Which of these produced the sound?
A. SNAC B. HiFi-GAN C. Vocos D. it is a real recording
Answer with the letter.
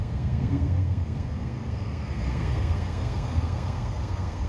A